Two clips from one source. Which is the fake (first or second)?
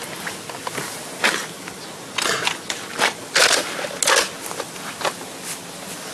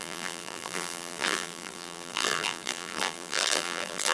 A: second